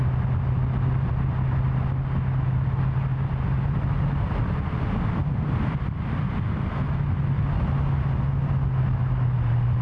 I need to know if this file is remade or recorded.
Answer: recorded